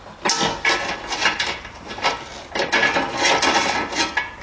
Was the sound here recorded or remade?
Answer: recorded